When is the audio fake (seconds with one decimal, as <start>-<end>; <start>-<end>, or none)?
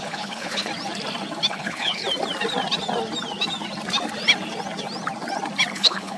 0.0-0.7; 1.5-2.0; 5.7-6.2